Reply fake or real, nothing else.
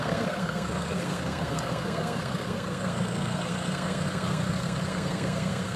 fake